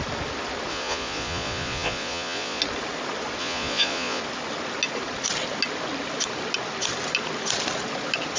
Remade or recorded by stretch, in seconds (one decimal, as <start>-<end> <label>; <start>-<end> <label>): 0.0-0.7 recorded; 0.7-2.6 remade; 2.6-3.4 recorded; 3.4-4.2 remade; 4.2-8.4 recorded